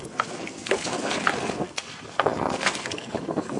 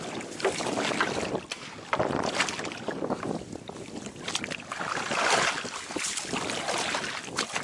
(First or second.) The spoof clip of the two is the first